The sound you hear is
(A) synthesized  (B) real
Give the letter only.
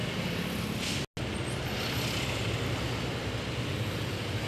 B